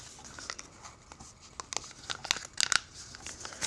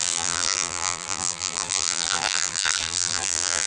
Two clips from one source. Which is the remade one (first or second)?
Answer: second